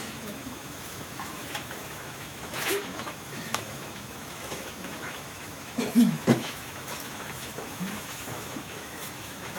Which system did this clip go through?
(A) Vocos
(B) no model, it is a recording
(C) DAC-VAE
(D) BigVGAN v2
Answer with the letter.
C